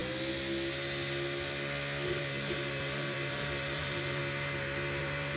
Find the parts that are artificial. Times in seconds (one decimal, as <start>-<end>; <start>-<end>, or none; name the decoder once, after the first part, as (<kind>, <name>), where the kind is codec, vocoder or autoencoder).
2.2-4.2 (vocoder, BigVGAN v2); 5.0-5.4

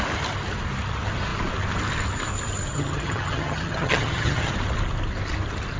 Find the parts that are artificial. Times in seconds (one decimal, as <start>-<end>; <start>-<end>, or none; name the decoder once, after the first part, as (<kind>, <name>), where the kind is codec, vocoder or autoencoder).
2.7-4.5 (vocoder, HiFi-GAN)